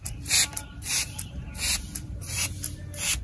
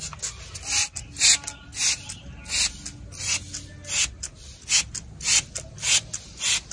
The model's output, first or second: first